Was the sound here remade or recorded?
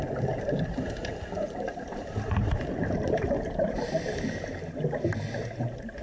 remade